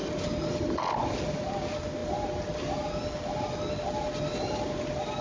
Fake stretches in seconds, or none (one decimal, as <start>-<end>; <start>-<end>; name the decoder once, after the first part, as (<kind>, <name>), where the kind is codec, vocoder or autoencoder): none